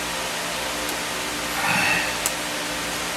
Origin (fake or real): real